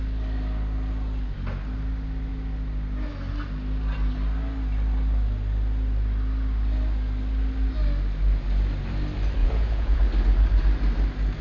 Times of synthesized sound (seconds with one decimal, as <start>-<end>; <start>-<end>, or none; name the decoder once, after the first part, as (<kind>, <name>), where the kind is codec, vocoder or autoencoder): 9.4-10.0 (vocoder, Vocos)